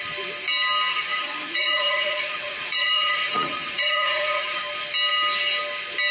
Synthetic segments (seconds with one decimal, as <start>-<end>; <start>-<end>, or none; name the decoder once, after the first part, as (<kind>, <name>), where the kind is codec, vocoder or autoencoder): 0.9-4.6 (vocoder, Vocos)